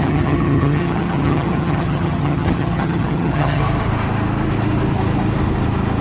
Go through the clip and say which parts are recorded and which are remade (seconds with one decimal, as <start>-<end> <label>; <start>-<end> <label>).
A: 0.0-3.6 remade; 3.6-6.0 recorded